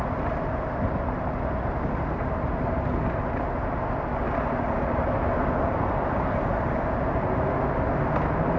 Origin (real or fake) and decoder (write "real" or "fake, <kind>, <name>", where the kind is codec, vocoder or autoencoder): real